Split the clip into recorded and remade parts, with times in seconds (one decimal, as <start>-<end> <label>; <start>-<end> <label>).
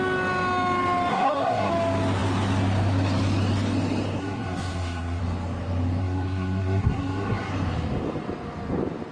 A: 0.0-1.1 recorded; 1.1-1.7 remade; 1.7-4.2 recorded; 4.2-5.2 remade; 5.2-6.0 recorded; 6.0-7.5 remade; 7.5-9.1 recorded